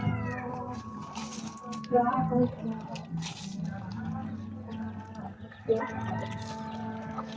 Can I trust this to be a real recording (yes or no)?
yes